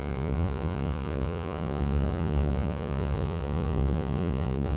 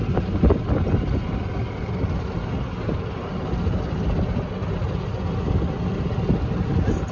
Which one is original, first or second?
second